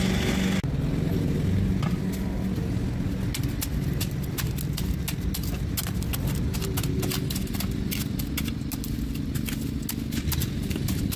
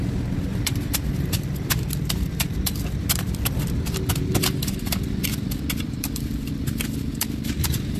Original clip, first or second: first